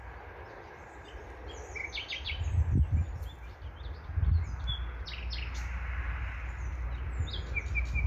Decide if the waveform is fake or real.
real